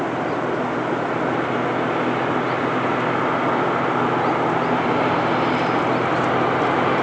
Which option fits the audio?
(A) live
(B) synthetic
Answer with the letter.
A